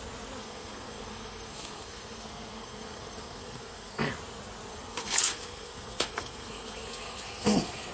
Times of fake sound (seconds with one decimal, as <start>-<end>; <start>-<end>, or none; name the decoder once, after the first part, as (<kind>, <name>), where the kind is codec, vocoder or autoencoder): 0.4-4.1 (codec, SNAC); 4.7-7.9